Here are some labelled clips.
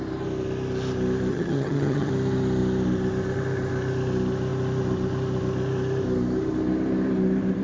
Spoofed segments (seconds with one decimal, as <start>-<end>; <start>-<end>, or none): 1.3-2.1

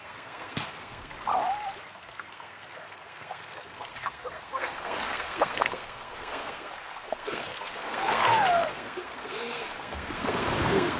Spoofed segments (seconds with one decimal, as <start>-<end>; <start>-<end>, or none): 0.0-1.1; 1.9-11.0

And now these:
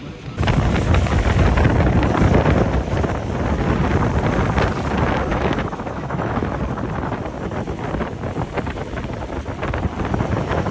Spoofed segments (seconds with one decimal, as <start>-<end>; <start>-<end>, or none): 5.3-6.6

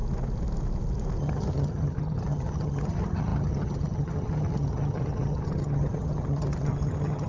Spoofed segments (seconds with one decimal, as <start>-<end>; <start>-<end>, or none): 1.2-7.3

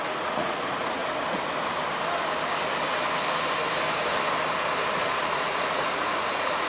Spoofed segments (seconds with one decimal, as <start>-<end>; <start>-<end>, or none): 0.0-1.0; 4.9-6.7

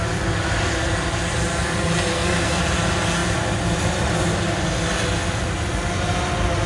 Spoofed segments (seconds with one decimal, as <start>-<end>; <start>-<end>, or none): 2.1-2.6

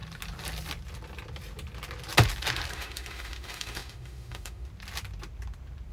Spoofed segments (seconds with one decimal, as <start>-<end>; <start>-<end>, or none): 2.7-4.7

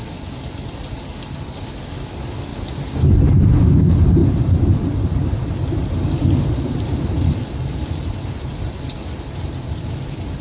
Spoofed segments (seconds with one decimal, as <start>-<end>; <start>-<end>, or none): none